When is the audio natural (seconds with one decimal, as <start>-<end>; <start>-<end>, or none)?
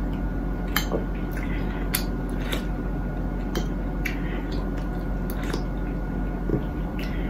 0.0-6.5